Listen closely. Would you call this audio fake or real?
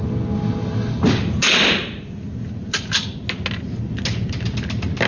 real